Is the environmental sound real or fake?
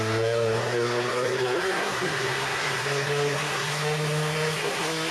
fake